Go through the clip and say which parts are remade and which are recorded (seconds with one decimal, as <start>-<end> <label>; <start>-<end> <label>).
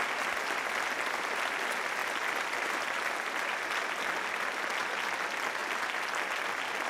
0.0-6.9 recorded